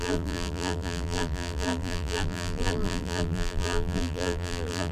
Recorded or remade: remade